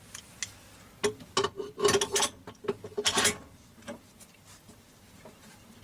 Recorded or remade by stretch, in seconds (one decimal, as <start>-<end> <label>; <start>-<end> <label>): 0.0-5.8 recorded